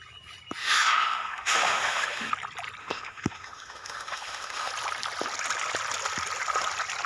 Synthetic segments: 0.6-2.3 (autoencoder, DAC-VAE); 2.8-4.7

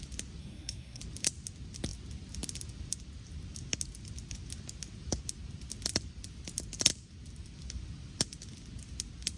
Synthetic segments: 0.4-1.0 (codec, SNAC)

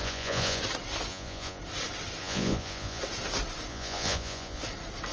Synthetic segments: 0.0-0.6 (vocoder, Vocos); 1.1-1.6; 2.2-3.0; 3.7-4.6

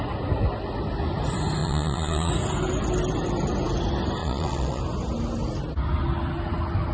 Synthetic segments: 1.6-2.3 (vocoder, Vocos); 4.2-4.8

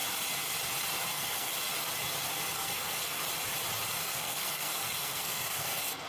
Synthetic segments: 1.1-1.5 (codec, SNAC); 2.5-3.2; 4.0-6.1

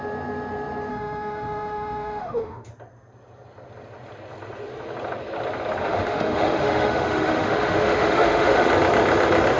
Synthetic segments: 0.9-2.7 (autoencoder, DAC-VAE); 5.8-8.7

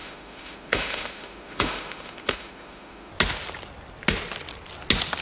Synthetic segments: 0.0-3.1 (autoencoder, DAC-VAE)

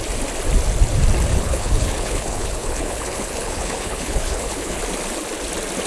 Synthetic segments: 1.3-4.8 (codec, HILCodec)